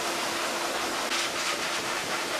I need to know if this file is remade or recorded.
recorded